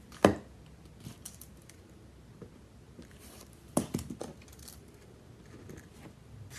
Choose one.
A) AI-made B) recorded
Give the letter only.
B